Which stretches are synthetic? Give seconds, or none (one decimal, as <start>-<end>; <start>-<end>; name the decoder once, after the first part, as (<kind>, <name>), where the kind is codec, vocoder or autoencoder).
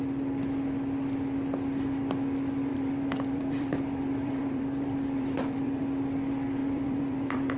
2.7-5.8 (vocoder, BigVGAN v2); 6.6-7.6